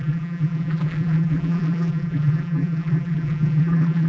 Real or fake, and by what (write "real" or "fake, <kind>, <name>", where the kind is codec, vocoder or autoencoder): fake, vocoder, BigVGAN v2